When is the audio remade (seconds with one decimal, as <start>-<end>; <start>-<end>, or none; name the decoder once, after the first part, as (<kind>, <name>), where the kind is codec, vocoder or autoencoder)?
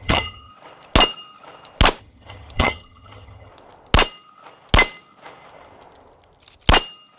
0.0-0.5 (vocoder, HiFi-GAN); 2.0-3.5